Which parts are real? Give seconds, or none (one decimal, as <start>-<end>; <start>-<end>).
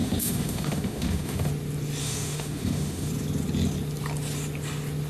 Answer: 1.5-2.0; 3.1-5.1